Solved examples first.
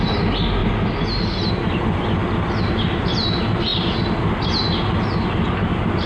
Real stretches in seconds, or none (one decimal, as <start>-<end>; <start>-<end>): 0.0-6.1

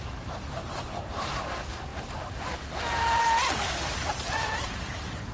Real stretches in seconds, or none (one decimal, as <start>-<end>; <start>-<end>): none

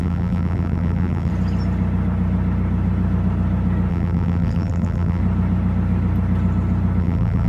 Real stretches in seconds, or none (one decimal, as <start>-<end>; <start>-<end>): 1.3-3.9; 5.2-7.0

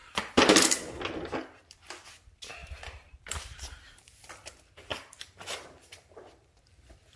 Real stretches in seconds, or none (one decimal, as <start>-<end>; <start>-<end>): 1.0-2.6; 4.3-4.9; 6.6-7.2

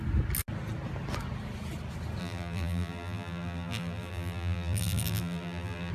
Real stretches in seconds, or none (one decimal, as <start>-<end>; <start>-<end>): 0.0-2.2

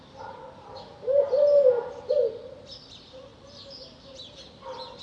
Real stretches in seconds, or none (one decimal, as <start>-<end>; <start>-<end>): 0.9-2.5